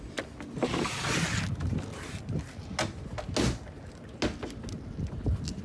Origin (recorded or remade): recorded